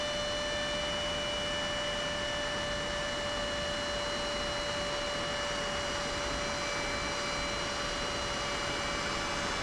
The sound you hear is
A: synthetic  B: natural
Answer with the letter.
B